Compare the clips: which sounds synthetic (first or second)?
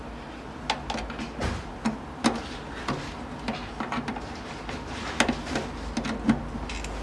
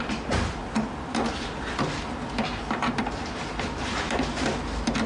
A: second